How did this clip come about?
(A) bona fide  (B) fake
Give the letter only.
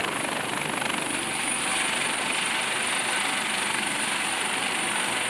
A